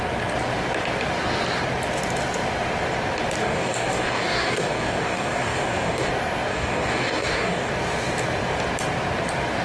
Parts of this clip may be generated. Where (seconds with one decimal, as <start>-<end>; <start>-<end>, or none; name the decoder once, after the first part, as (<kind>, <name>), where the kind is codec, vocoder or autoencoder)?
3.4-6.1 (codec, DAC); 6.5-7.7